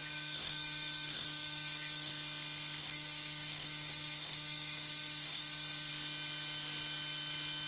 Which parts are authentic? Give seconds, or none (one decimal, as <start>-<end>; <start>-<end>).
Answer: 2.1-2.8; 5.9-7.7